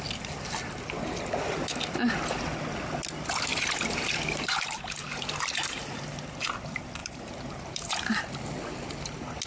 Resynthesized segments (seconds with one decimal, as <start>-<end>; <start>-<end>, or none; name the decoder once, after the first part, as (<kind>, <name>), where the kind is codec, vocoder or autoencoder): 3.5-6.2 (vocoder, BigVGAN v2); 7.0-8.2